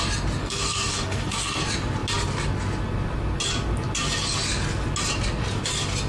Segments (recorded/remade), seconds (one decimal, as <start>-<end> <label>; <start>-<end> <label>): 0.0-0.4 recorded; 0.4-1.6 remade; 1.6-6.1 recorded